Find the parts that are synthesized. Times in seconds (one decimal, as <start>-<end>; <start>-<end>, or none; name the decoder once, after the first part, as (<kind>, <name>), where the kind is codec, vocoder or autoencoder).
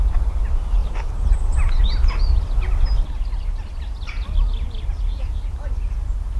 none